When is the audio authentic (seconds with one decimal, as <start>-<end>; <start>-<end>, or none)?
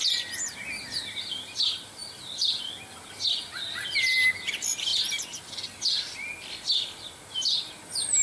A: 0.0-8.2